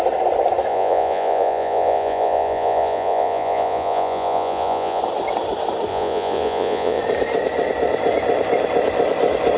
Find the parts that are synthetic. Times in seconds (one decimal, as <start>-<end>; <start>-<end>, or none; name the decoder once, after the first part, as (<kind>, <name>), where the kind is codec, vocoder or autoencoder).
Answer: 0.7-5.0 (vocoder, Vocos); 5.9-7.0